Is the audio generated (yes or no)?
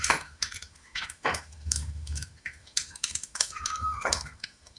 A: yes